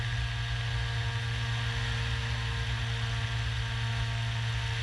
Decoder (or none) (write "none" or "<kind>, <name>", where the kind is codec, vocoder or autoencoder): none